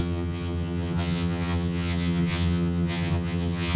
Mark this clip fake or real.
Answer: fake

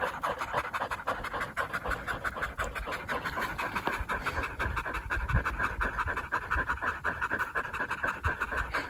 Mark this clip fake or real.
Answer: real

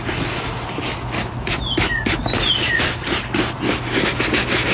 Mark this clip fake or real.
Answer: real